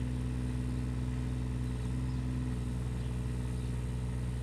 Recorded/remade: recorded